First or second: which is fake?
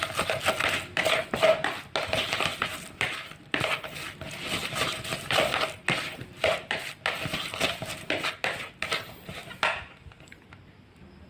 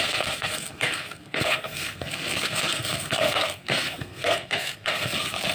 second